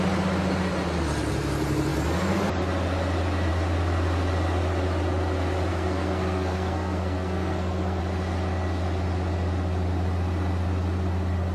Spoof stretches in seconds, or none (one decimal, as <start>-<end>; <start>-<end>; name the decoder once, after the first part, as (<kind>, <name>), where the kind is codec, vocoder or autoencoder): 5.7-8.0 (codec, SNAC)